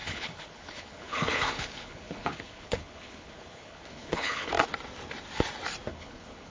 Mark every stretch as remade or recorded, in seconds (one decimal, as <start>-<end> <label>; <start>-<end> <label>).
0.0-4.5 remade; 4.5-5.9 recorded; 5.9-6.5 remade